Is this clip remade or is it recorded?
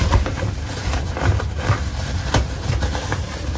recorded